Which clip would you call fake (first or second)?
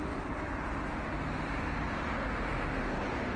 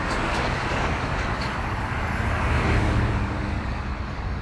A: second